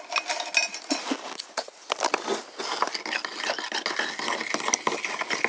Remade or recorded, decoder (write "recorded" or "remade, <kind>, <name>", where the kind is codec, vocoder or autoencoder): recorded